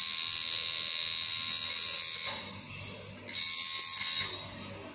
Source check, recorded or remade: recorded